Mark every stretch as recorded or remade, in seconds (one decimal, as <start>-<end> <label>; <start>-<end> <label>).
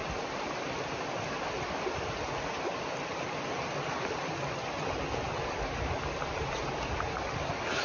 0.0-7.8 recorded